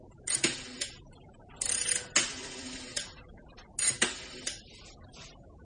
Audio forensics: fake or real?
real